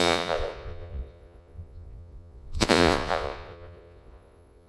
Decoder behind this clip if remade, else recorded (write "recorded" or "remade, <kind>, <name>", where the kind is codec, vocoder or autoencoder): remade, vocoder, Vocos